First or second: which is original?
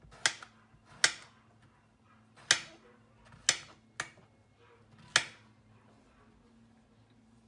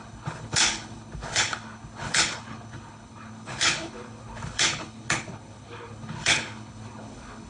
first